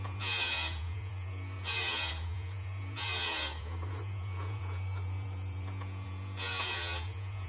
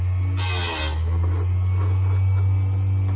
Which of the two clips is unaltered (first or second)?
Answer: second